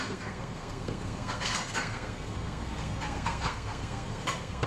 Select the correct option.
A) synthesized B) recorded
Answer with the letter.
A